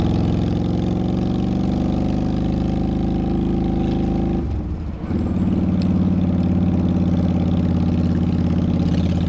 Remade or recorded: recorded